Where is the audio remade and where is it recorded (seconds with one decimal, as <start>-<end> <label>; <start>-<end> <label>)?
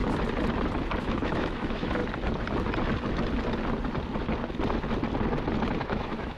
0.0-1.0 recorded; 1.0-2.0 remade; 2.0-5.8 recorded; 5.8-6.4 remade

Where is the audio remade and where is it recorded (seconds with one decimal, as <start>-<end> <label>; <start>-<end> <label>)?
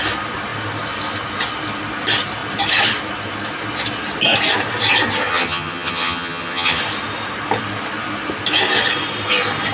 0.0-5.3 recorded; 5.3-6.8 remade; 6.8-9.7 recorded